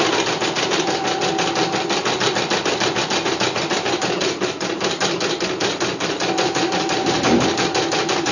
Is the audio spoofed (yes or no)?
no